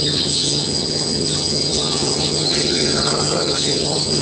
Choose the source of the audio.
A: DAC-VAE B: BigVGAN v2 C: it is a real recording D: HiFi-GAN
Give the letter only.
D